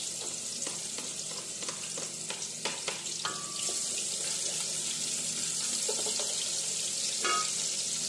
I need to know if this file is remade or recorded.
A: recorded